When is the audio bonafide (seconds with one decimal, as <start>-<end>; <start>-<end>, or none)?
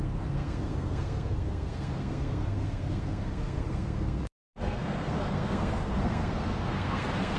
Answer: none